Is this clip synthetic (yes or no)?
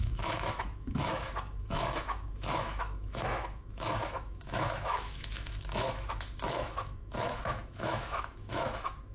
yes